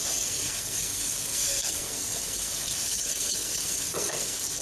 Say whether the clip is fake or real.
fake